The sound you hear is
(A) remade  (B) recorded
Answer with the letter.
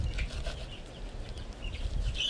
B